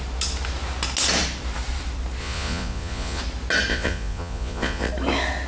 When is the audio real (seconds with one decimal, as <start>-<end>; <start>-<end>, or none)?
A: 0.0-2.2; 3.2-3.7; 4.9-5.5

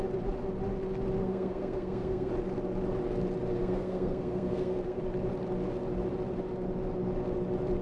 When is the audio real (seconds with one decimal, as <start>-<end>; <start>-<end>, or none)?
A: 0.0-1.2; 2.3-3.5; 5.0-7.8

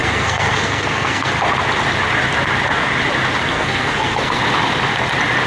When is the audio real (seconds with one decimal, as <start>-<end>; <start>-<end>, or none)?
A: 1.3-3.4; 4.4-5.5

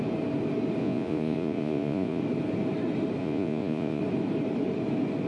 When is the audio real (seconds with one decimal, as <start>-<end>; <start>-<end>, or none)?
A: 0.0-0.8; 2.2-3.2; 4.0-5.3

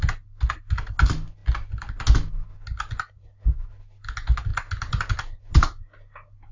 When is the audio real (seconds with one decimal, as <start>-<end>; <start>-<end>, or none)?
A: 0.0-6.5